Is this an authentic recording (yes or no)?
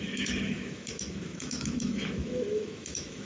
no